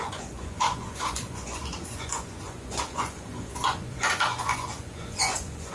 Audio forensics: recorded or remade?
remade